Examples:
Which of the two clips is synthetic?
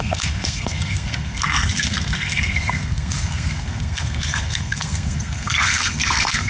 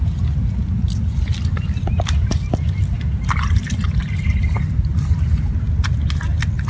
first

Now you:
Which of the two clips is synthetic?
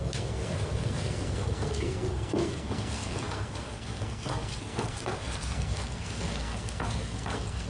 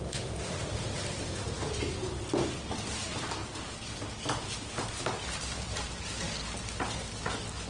first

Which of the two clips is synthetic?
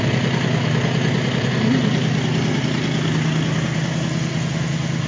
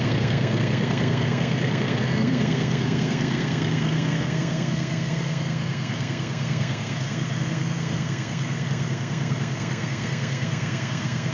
second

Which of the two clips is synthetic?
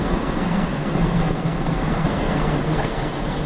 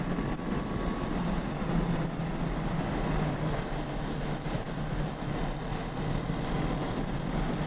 first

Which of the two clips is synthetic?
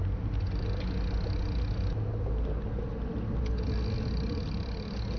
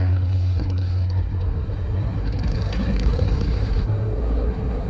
second